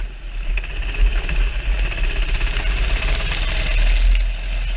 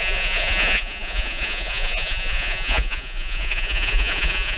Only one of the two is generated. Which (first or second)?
second